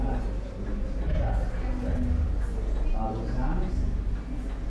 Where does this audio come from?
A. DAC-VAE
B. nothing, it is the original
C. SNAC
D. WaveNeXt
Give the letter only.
B